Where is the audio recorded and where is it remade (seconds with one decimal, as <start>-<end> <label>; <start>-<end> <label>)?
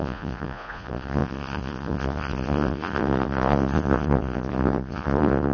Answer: 0.0-5.5 remade